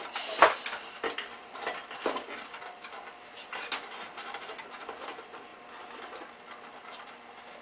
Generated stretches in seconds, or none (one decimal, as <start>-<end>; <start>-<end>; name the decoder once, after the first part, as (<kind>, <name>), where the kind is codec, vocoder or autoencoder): none

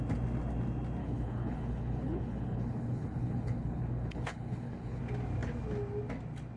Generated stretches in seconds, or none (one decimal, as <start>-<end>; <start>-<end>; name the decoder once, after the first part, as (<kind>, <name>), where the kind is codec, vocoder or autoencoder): 1.0-5.0 (codec, HILCodec)

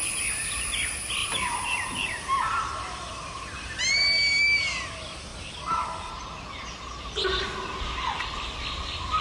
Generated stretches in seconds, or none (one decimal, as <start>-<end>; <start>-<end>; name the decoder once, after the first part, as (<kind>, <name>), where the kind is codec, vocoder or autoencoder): 1.2-3.9 (vocoder, BigVGAN v2)

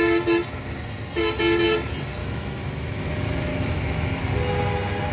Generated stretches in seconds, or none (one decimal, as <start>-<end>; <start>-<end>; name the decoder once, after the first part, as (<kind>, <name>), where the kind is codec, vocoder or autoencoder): 2.2-3.1 (autoencoder, DAC-VAE); 3.5-4.2